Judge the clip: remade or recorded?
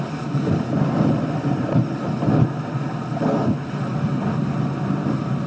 recorded